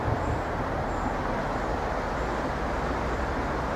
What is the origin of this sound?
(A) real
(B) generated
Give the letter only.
A